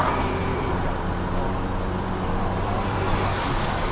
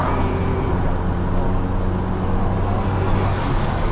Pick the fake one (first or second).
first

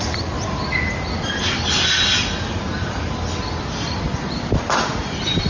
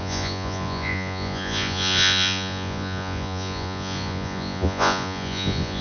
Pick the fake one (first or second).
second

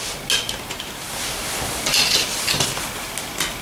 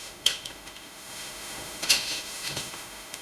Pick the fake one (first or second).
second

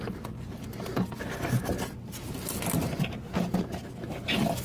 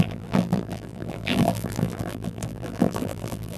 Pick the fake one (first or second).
second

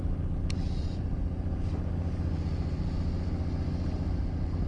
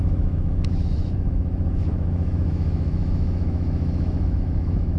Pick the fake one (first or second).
second